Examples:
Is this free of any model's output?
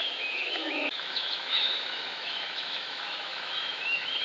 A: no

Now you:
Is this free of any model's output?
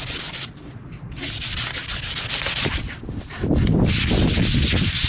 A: yes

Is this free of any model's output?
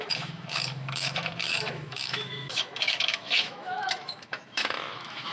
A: no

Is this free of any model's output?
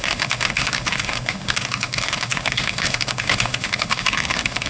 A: no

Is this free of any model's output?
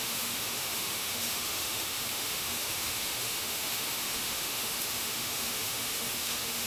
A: no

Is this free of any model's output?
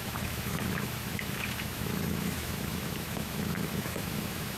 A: no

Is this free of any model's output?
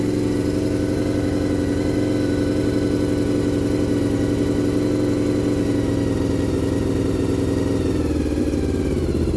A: yes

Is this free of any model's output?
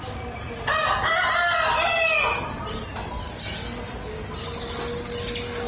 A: yes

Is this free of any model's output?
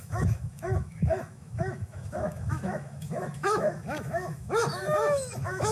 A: no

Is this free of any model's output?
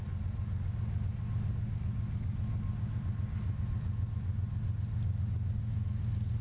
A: yes